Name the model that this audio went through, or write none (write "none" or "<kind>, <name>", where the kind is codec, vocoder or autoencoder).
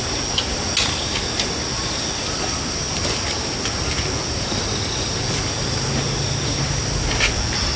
none